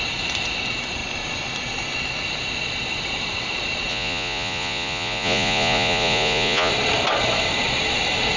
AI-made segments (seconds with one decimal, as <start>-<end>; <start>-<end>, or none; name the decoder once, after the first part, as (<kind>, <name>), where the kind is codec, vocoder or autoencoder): 3.9-6.7 (vocoder, Vocos)